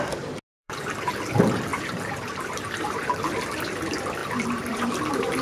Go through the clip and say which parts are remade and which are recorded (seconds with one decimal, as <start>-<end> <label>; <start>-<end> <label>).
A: 0.0-0.5 recorded; 0.5-1.1 remade; 1.1-1.7 recorded; 1.7-3.2 remade; 3.2-4.2 recorded; 4.2-5.0 remade; 5.0-5.4 recorded